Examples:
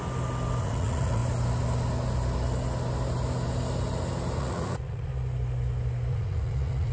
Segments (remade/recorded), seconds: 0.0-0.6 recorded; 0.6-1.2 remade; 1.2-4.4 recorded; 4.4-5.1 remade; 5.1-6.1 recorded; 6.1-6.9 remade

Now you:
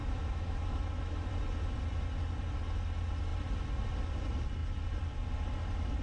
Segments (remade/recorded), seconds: 0.0-1.3 remade; 1.3-6.0 recorded

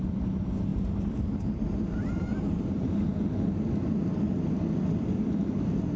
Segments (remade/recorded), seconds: 0.0-0.7 recorded; 0.7-3.0 remade; 3.0-6.0 recorded

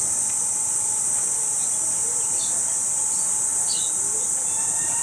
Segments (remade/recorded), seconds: 0.0-5.0 recorded

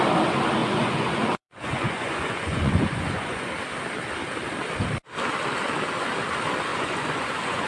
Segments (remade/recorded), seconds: 0.0-0.6 recorded; 0.6-3.5 remade; 3.5-6.7 recorded; 6.7-7.7 remade

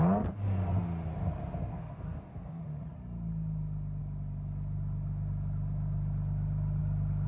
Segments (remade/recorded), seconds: 0.0-1.7 recorded; 1.7-2.6 remade; 2.6-7.3 recorded

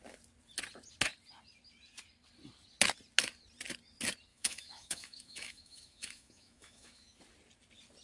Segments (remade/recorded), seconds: 0.0-4.3 recorded; 4.3-7.2 remade; 7.2-8.0 recorded